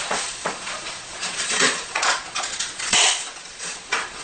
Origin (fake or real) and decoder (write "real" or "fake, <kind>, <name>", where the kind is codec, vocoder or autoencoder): fake, vocoder, Vocos